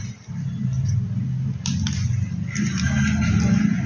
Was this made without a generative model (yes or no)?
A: yes